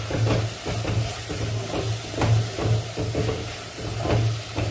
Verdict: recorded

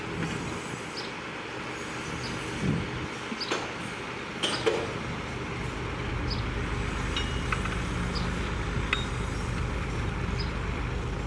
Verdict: recorded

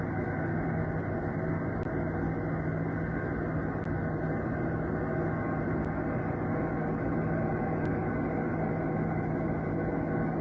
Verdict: recorded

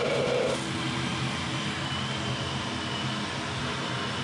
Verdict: recorded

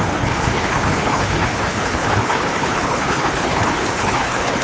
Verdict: remade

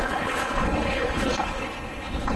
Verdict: remade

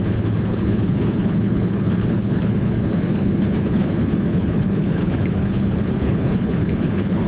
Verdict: remade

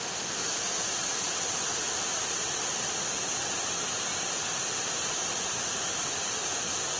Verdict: recorded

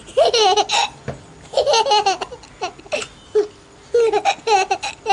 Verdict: recorded